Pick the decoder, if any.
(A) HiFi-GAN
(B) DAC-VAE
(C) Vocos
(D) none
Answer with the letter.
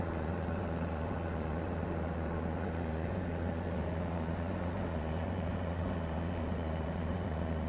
C